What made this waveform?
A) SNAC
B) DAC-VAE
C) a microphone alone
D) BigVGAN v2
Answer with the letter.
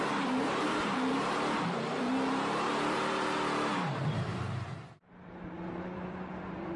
D